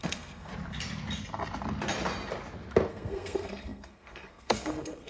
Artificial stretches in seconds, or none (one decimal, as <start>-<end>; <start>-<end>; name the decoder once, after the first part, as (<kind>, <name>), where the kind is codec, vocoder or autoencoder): 0.0-0.5 (codec, SNAC); 2.9-5.1

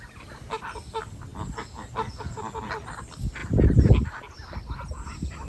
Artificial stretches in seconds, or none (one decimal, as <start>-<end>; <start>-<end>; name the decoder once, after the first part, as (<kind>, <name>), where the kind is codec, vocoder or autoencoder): none